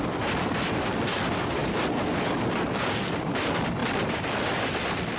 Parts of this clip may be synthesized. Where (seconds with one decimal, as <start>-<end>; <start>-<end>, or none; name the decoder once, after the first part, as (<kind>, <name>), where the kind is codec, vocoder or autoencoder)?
0.0-1.6 (vocoder, BigVGAN v2); 2.3-5.2